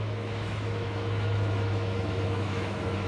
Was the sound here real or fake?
fake